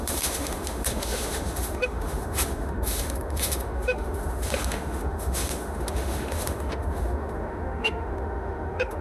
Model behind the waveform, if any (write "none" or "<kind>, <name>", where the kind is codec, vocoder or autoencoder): autoencoder, DAC-VAE